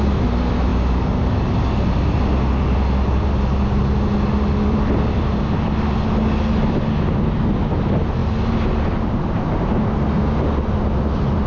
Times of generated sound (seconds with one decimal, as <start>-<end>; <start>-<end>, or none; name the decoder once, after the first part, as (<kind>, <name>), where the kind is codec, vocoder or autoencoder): none